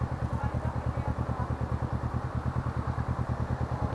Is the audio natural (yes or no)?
no